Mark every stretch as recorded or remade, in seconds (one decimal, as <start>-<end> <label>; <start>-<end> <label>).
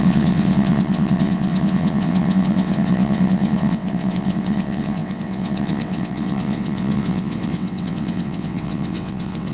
0.0-9.5 remade